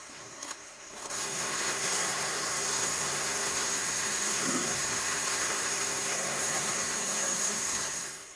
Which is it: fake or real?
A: fake